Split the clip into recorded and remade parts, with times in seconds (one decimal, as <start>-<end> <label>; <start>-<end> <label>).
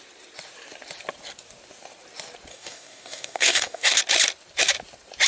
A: 0.0-2.5 recorded; 2.5-4.0 remade; 4.0-5.3 recorded